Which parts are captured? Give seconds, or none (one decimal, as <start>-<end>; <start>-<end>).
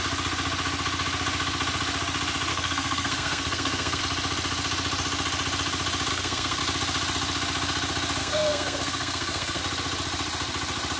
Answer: 0.0-2.5; 4.0-6.1; 6.6-8.2; 9.6-11.0